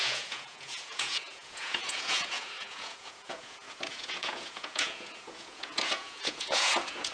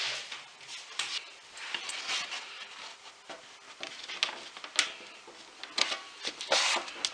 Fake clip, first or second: first